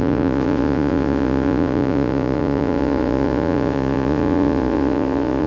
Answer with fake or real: fake